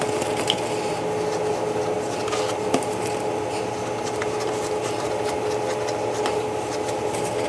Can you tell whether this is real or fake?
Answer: real